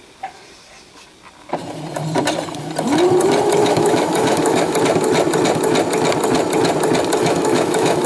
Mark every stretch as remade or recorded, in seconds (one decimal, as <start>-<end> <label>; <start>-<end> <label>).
0.0-3.6 recorded; 3.6-4.8 remade; 4.8-7.2 recorded; 7.2-8.1 remade